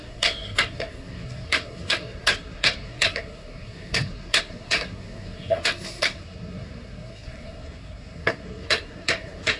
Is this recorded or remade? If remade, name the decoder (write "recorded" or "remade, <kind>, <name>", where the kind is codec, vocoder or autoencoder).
remade, codec, SNAC